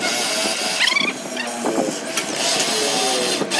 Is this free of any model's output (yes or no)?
yes